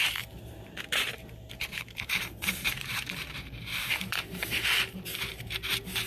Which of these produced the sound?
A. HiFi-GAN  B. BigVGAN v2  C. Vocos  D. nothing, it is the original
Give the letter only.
B